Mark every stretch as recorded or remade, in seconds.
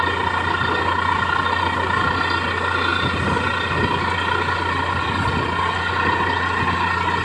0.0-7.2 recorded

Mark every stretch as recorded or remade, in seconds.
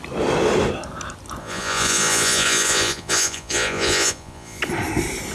0.0-1.4 recorded; 1.4-4.6 remade; 4.6-5.3 recorded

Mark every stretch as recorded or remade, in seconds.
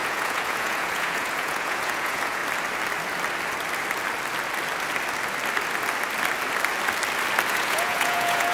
0.0-2.4 remade; 2.4-7.5 recorded; 7.5-8.5 remade